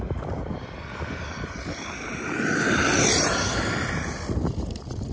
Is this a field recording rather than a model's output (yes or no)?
yes